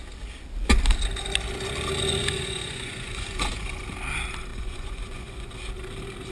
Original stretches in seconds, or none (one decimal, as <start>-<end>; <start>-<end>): 0.0-2.2; 3.8-4.5; 5.5-6.3